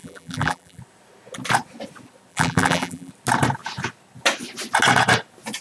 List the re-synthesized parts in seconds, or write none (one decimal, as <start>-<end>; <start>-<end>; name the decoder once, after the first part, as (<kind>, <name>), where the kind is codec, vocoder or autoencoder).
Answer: 0.0-0.8 (vocoder, BigVGAN v2); 2.3-3.1